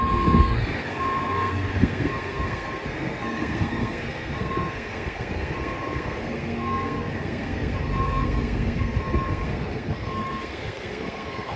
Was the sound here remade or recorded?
remade